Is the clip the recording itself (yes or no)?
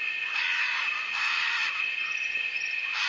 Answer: yes